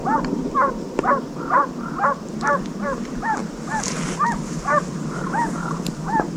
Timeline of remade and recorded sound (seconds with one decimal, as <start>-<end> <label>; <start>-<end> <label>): 0.0-1.3 remade; 1.3-3.4 recorded; 3.4-4.8 remade; 4.8-6.4 recorded